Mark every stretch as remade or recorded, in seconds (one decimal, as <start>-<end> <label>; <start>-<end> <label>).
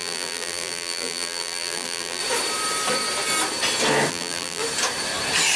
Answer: 0.0-2.2 remade; 2.2-4.1 recorded; 4.1-4.6 remade; 4.6-5.6 recorded